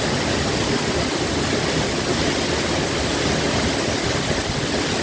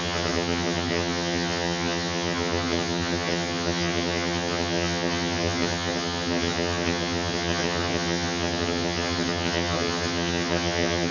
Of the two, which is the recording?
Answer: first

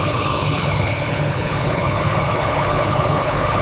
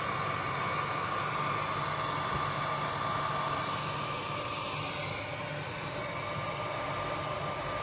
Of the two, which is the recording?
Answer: second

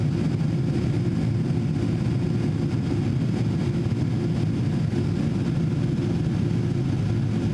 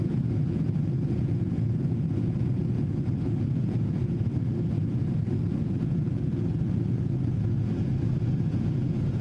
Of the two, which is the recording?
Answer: first